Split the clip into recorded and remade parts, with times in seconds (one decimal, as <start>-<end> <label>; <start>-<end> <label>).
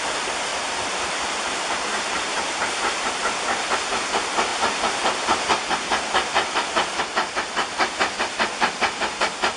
0.0-0.5 recorded; 0.5-3.1 remade; 3.1-4.5 recorded; 4.5-7.0 remade; 7.0-9.6 recorded